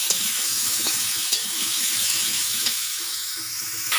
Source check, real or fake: fake